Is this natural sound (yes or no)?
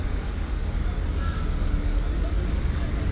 no